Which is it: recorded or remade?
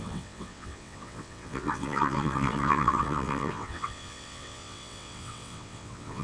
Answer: remade